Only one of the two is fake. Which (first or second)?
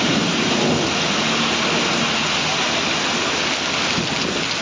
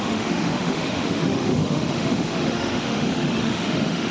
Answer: second